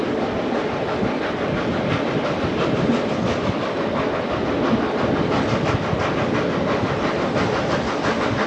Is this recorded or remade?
recorded